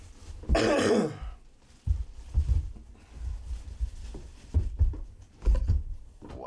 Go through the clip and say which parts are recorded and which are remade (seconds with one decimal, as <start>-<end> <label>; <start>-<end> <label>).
0.0-4.3 recorded; 4.3-5.1 remade; 5.1-5.8 recorded; 5.8-6.5 remade